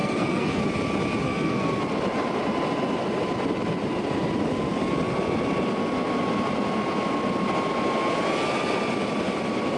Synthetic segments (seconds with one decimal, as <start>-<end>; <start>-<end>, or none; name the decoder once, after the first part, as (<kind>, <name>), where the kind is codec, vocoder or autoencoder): 0.0-0.6 (codec, SNAC); 1.2-1.8